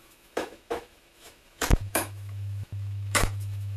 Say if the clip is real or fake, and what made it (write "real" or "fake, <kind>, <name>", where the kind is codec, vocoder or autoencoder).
fake, autoencoder, DAC-VAE